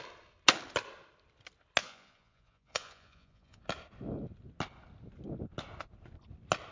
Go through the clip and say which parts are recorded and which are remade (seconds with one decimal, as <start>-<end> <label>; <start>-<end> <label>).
0.0-1.8 recorded; 1.8-3.6 remade; 3.6-6.7 recorded